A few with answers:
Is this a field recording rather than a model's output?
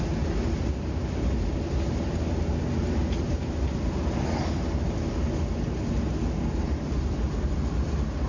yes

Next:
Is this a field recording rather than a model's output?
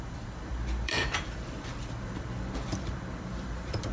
no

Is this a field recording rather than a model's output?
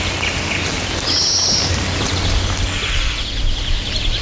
yes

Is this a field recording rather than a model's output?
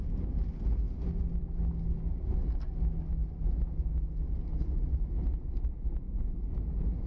yes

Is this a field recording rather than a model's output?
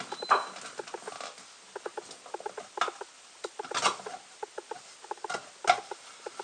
yes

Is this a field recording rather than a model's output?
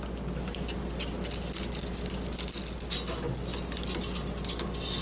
yes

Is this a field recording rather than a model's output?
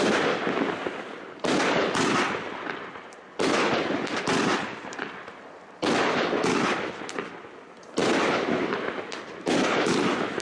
yes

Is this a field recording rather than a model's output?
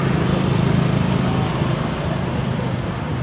yes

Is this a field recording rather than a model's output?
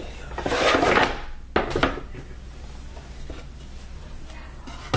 yes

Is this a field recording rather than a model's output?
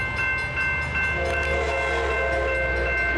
yes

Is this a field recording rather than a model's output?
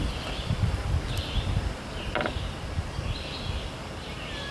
yes